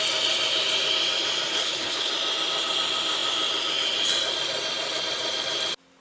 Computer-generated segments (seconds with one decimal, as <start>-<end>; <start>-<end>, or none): 1.5-2.1